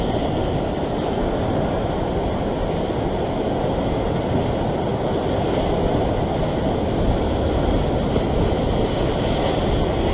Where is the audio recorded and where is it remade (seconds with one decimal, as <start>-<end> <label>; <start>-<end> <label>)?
0.0-10.1 recorded